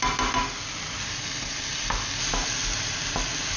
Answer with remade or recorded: recorded